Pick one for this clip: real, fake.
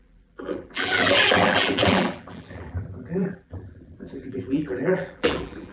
fake